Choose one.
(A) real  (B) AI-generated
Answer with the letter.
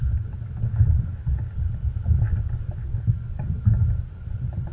A